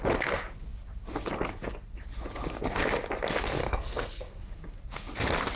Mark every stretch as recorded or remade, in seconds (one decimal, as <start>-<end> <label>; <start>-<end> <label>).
0.0-3.6 recorded; 3.6-4.4 remade; 4.4-5.6 recorded